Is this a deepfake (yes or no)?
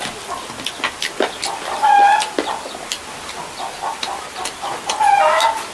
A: no